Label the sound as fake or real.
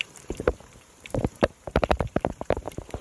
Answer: fake